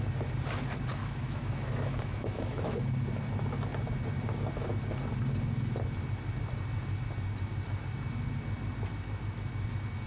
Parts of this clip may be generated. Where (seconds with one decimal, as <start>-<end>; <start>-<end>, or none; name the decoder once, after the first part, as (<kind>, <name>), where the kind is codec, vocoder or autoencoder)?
1.0-2.9 (autoencoder, DAC-VAE)